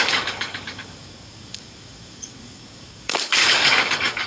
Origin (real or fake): fake